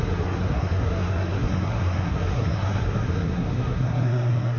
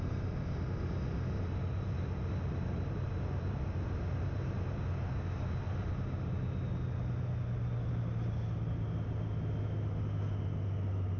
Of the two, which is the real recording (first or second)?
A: second